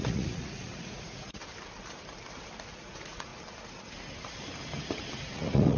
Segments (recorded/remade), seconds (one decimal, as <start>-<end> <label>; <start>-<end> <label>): 0.0-1.4 remade; 1.4-2.7 recorded; 2.7-3.3 remade; 3.3-5.2 recorded; 5.2-5.8 remade